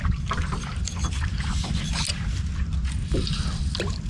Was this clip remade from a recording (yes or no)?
no